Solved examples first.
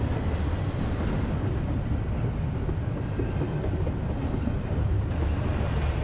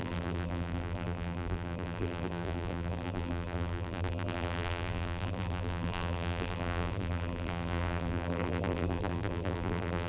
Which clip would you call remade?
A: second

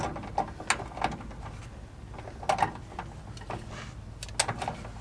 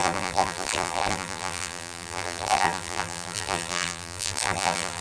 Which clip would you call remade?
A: second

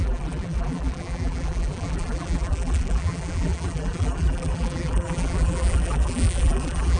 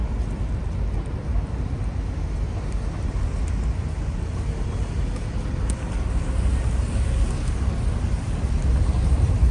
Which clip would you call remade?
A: first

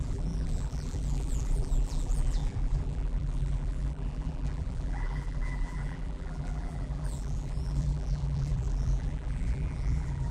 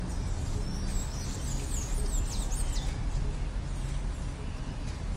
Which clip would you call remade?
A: first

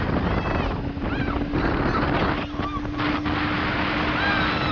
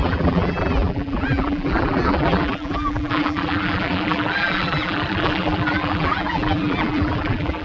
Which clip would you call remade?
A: second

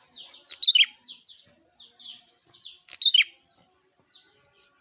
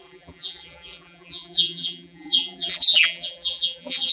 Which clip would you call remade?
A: second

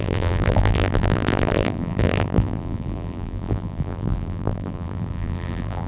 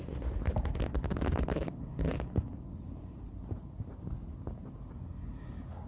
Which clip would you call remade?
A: first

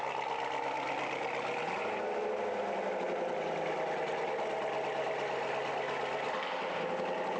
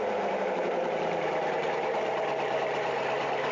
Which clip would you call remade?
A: second